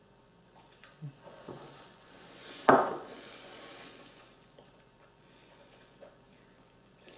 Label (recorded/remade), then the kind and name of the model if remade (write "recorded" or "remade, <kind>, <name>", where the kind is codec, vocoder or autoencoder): remade, vocoder, Vocos